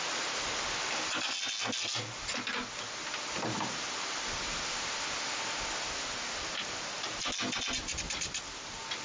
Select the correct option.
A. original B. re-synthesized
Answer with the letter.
A